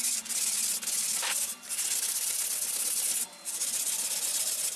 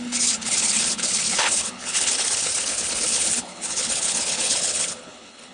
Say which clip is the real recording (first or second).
first